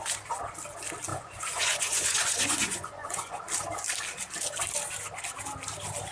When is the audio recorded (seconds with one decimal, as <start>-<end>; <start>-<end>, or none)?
0.0-1.1; 3.4-6.1